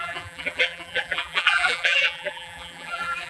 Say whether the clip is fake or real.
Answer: fake